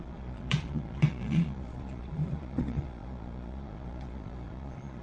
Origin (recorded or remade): remade